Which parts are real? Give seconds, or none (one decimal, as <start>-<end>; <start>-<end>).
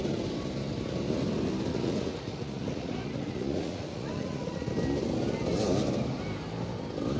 0.0-1.7; 4.7-7.2